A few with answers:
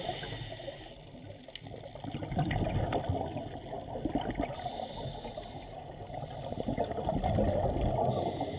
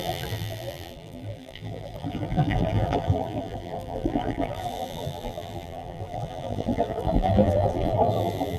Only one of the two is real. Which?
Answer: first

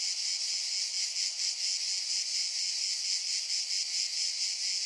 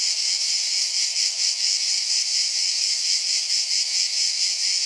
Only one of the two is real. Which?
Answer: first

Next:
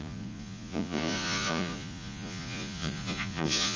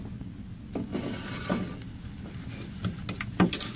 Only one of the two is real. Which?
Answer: second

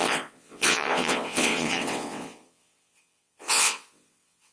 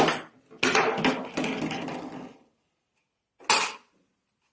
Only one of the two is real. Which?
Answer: second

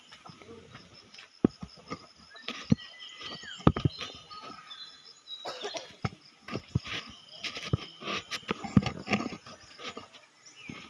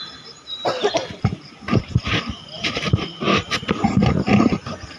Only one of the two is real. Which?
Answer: first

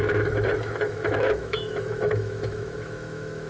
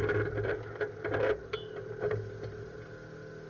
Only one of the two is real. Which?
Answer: second